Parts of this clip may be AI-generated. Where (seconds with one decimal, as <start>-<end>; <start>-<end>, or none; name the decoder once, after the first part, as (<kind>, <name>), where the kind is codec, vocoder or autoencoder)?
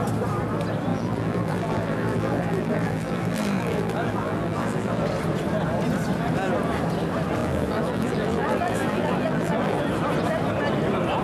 0.9-5.0 (vocoder, BigVGAN v2); 7.4-9.8